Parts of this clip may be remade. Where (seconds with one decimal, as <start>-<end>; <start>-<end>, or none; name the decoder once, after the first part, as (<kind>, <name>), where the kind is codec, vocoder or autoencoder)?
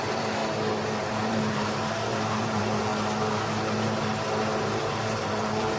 0.0-0.4 (vocoder, BigVGAN v2); 1.0-2.9; 4.6-5.8